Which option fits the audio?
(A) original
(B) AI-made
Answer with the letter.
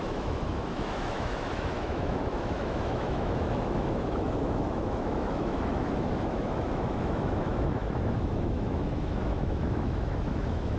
B